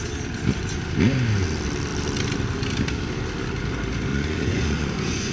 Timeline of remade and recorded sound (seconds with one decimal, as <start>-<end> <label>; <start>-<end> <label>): 0.0-4.1 recorded; 4.1-5.3 remade